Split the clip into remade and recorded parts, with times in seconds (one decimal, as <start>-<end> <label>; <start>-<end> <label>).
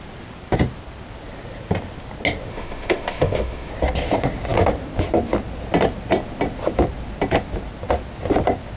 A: 0.0-2.5 recorded; 2.5-3.7 remade; 3.7-8.8 recorded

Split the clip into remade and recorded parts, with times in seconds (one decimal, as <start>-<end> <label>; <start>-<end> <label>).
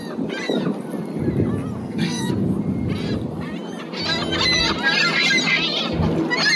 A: 0.0-1.8 recorded; 1.8-2.3 remade; 2.3-6.6 recorded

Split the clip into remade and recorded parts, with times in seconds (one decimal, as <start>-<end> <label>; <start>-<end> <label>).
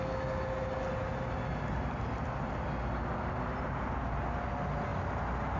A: 0.0-5.6 recorded